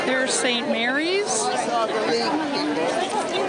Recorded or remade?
recorded